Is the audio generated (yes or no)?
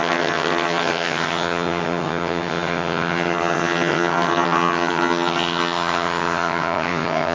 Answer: yes